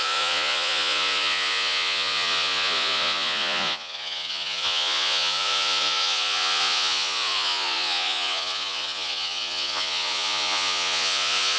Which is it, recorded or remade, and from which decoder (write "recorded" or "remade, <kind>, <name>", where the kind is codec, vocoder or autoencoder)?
remade, vocoder, Vocos